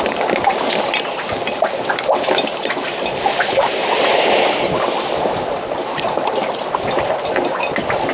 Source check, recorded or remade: recorded